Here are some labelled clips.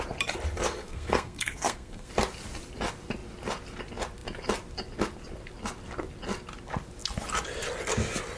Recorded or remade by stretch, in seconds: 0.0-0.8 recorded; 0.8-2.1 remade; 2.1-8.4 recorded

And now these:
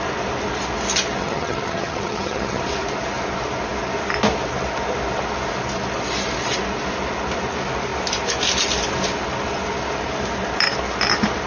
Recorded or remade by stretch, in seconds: 0.0-1.2 recorded; 1.2-2.6 remade; 2.6-11.5 recorded

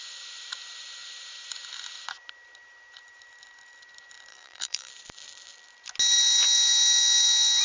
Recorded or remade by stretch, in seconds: 0.0-4.3 recorded; 4.3-4.9 remade; 4.9-7.6 recorded

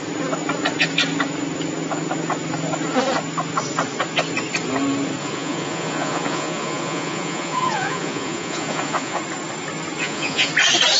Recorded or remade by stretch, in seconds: 0.0-5.2 recorded; 5.2-9.2 remade; 9.2-10.0 recorded; 10.0-10.5 remade; 10.5-11.0 recorded

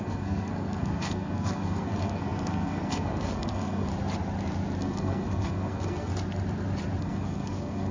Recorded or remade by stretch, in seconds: 0.0-3.9 remade; 3.9-4.8 recorded; 4.8-6.1 remade; 6.1-7.0 recorded; 7.0-7.9 remade

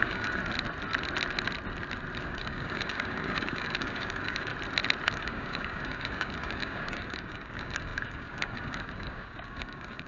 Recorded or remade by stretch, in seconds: 0.0-0.4 remade; 0.4-2.2 recorded; 2.2-4.5 remade; 4.5-5.1 recorded; 5.1-10.1 remade

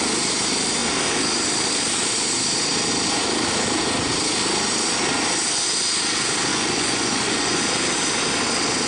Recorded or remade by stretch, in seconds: 0.0-6.5 recorded; 6.5-7.6 remade; 7.6-8.9 recorded